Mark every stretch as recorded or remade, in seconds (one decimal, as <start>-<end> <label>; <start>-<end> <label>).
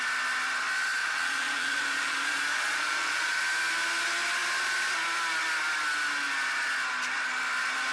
0.0-1.0 recorded; 1.0-3.4 remade; 3.4-7.9 recorded